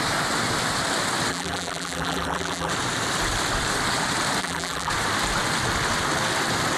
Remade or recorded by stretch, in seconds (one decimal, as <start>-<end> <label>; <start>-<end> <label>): 0.0-1.3 recorded; 1.3-2.7 remade; 2.7-4.4 recorded; 4.4-4.9 remade; 4.9-6.8 recorded